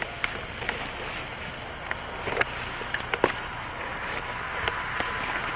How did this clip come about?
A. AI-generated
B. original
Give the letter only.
B